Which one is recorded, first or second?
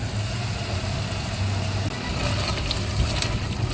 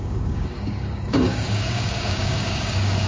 first